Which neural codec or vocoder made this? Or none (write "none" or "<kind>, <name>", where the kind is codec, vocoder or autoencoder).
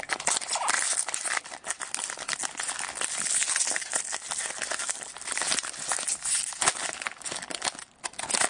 none